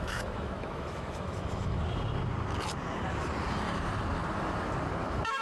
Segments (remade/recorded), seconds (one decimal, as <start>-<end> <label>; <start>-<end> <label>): 0.0-1.8 remade; 1.8-5.0 recorded; 5.0-5.4 remade